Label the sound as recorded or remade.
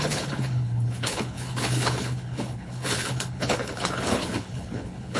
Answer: remade